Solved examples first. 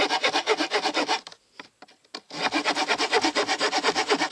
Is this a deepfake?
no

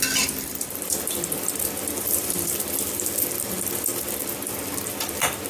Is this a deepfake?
yes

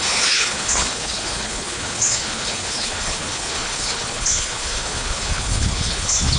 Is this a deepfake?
yes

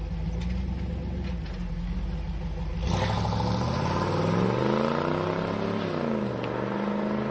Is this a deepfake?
no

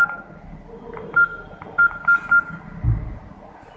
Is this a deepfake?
no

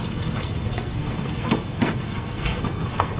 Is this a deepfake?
yes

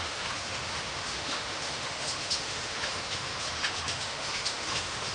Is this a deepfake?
yes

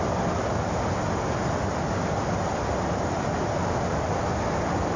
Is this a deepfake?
no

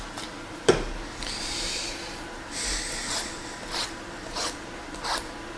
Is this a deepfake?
no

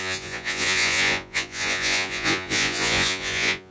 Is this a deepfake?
yes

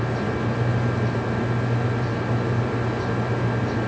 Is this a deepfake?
no